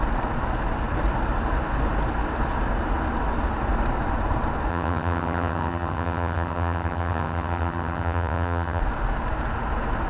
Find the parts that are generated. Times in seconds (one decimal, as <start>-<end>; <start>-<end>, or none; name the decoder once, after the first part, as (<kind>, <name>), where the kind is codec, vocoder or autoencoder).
4.7-8.8 (vocoder, HiFi-GAN)